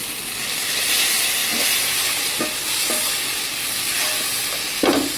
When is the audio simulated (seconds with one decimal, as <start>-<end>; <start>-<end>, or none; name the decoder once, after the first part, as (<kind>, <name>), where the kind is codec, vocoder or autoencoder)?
none